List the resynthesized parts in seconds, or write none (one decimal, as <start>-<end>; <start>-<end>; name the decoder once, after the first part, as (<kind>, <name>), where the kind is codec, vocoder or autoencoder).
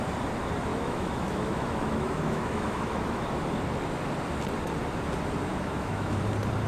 0.7-3.2 (autoencoder, DAC-VAE); 5.5-6.2